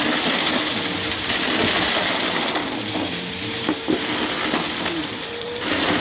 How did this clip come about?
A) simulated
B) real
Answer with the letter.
A